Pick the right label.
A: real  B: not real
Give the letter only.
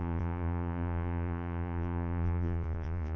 B